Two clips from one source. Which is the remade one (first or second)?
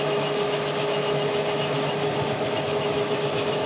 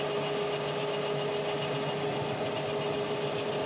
first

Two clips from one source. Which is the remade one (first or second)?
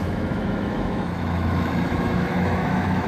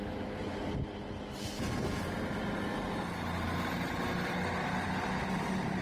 first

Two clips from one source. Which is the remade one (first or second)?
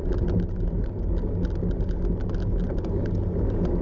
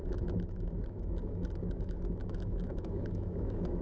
second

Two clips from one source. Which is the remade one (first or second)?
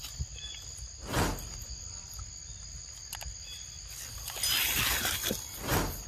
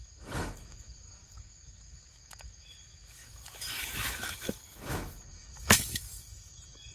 second